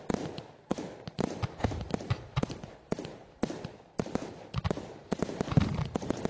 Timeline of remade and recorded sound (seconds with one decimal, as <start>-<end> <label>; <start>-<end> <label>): 0.0-6.3 recorded